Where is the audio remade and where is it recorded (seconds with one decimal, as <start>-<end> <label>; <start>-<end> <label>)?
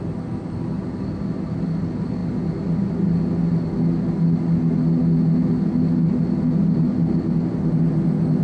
0.0-8.4 recorded